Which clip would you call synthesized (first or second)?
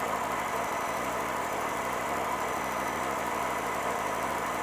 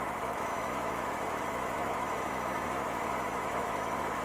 second